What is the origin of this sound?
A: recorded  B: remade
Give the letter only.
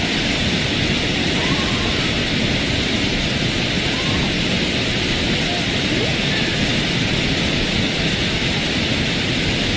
A